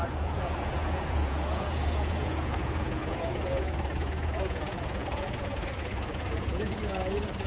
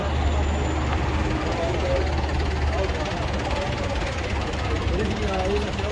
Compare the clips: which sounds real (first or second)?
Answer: second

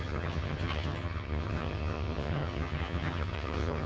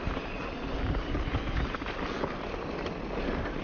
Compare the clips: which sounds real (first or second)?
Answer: second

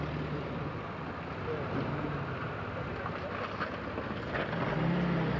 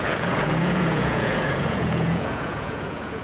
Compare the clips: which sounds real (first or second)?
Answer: first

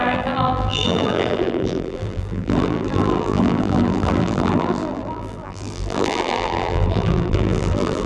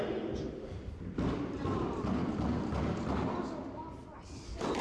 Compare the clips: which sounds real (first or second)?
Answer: second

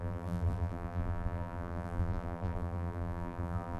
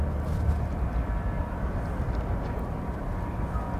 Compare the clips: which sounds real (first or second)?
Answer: second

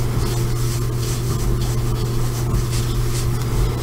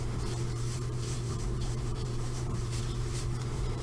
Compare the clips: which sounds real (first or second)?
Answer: first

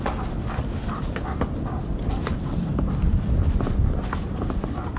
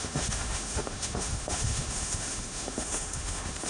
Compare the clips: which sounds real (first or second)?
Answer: first